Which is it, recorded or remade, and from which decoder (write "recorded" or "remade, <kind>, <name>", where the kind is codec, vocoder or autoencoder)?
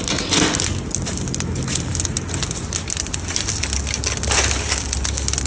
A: recorded